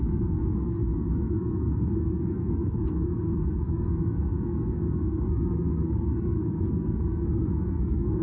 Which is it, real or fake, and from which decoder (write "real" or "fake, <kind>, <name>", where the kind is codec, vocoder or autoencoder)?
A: fake, codec, SNAC